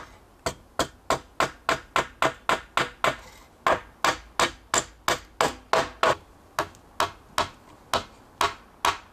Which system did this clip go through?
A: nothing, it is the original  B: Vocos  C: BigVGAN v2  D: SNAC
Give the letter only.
A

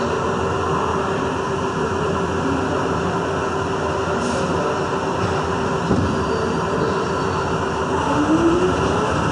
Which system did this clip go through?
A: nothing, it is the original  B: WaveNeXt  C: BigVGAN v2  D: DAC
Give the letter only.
A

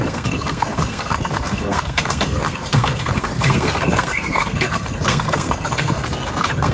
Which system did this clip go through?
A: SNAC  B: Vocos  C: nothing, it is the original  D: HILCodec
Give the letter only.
A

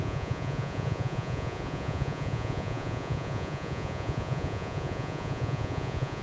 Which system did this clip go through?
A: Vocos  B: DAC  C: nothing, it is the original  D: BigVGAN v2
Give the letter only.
A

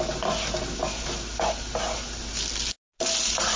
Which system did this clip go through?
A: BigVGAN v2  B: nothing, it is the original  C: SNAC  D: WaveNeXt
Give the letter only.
B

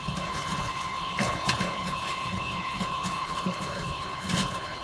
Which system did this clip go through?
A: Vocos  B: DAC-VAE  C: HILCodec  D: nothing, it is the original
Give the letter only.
C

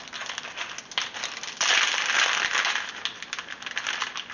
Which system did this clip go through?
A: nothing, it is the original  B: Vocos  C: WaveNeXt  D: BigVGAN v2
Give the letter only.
A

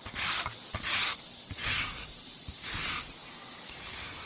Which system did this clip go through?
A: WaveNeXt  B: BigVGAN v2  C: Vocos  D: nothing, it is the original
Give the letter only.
D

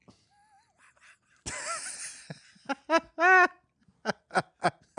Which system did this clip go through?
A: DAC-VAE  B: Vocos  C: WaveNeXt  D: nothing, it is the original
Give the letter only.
D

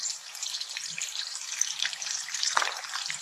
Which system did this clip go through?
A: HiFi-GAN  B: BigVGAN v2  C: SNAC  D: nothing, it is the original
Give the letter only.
B